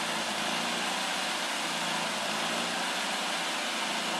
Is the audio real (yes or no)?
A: yes